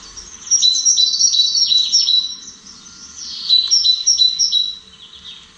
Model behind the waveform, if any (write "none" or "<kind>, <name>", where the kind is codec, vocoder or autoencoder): none